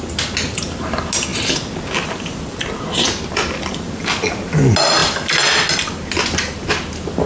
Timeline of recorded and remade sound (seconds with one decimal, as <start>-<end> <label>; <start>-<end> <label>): 0.0-7.3 recorded